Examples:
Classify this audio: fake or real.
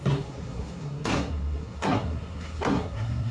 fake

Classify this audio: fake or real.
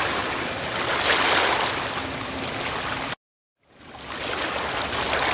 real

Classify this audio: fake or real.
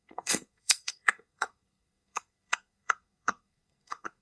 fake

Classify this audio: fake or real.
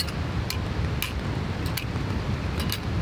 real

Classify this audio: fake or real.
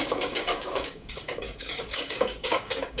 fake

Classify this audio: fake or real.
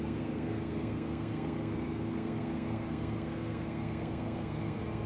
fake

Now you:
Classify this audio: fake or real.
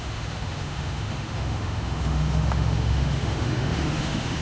fake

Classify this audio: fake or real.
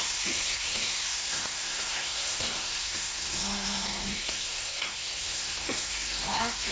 fake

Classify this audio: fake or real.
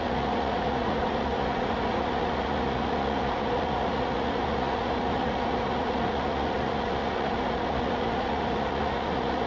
fake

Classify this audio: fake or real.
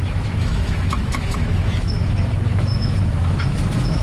fake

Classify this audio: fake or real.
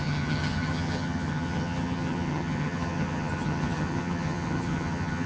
fake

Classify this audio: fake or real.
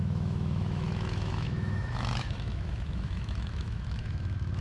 fake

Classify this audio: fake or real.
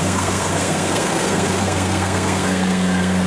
fake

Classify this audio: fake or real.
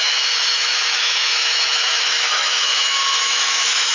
fake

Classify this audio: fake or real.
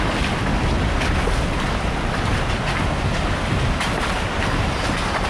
real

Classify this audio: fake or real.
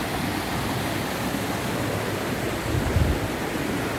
real